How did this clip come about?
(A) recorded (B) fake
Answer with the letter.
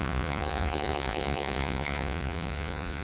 B